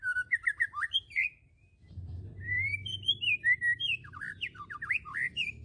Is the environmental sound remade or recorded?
remade